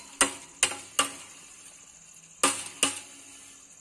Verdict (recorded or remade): recorded